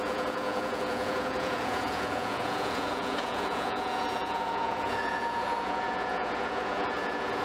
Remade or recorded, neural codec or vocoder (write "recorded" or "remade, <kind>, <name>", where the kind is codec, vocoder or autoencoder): remade, vocoder, Vocos